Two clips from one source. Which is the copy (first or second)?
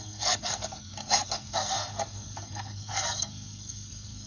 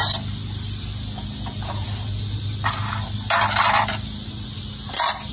first